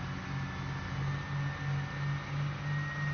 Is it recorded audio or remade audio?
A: recorded